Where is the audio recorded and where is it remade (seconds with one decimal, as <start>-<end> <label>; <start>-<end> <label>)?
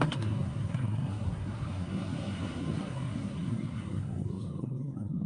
0.0-5.3 remade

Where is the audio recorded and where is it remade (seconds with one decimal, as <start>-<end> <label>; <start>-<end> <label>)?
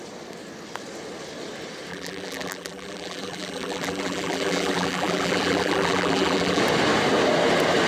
0.0-1.9 recorded; 1.9-6.6 remade; 6.6-7.9 recorded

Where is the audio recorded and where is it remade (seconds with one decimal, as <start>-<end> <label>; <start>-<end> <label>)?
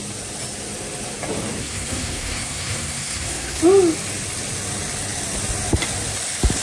0.0-1.6 recorded; 1.6-3.6 remade; 3.6-6.6 recorded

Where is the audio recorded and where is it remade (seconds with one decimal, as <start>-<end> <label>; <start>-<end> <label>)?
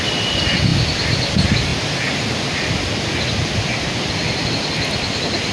0.0-5.5 recorded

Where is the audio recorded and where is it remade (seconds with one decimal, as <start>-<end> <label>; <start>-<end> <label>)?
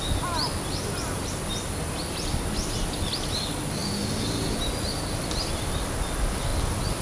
0.0-7.0 recorded